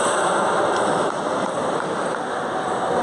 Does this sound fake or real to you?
real